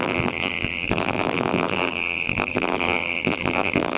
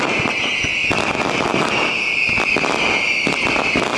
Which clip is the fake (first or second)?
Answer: first